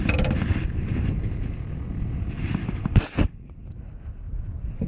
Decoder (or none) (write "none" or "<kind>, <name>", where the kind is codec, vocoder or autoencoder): none